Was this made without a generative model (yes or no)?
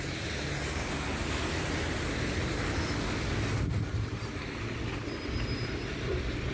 yes